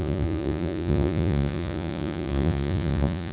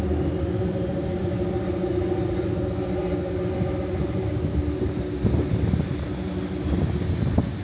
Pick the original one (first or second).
second